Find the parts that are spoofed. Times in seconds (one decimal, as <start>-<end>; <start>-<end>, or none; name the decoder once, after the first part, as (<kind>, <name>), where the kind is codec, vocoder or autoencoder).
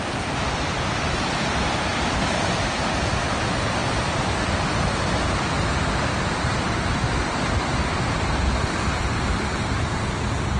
1.9-3.2 (vocoder, BigVGAN v2); 3.8-7.1